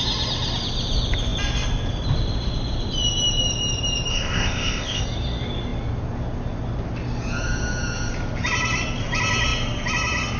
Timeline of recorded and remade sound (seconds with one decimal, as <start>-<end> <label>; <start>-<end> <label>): 0.0-4.1 recorded; 4.1-5.0 remade; 5.0-10.4 recorded